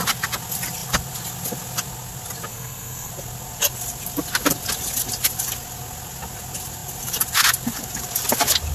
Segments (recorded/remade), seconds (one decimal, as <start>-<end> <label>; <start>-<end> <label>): 0.0-2.5 recorded; 2.5-3.1 remade; 3.1-8.7 recorded